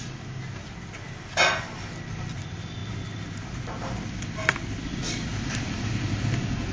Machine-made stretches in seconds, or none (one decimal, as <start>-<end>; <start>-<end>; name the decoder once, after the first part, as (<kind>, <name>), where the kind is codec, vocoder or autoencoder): none